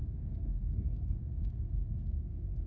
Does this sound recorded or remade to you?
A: remade